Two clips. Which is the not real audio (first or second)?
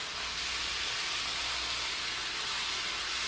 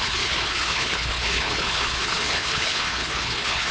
second